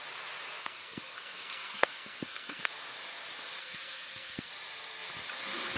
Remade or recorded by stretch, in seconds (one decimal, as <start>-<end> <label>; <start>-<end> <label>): 0.0-0.6 recorded; 0.6-2.7 remade; 2.7-3.6 recorded; 3.6-4.5 remade; 4.5-5.8 recorded